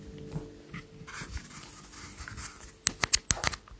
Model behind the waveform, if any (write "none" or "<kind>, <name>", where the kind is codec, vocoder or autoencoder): none